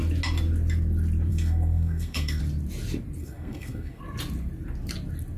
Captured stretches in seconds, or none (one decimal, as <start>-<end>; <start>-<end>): 0.0-1.3; 2.4-3.2; 4.0-5.4